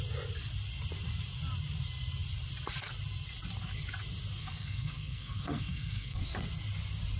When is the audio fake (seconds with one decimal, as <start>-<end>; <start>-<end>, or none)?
4.4-6.2